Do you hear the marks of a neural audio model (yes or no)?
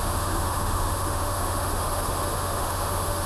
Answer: yes